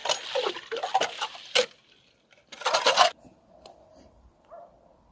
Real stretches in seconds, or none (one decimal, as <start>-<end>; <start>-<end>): 0.0-5.1